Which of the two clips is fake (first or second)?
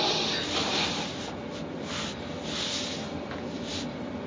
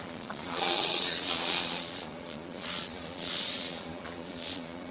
second